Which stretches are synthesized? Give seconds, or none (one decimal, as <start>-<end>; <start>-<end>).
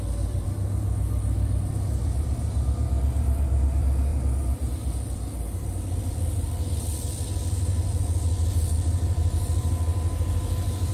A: 0.0-9.9